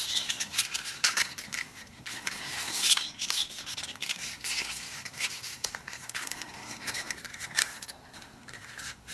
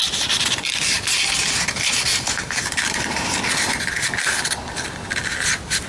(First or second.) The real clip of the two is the second